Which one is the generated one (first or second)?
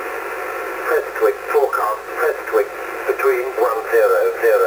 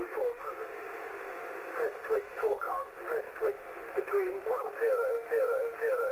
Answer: second